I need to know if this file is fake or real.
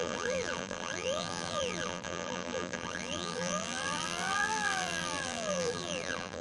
fake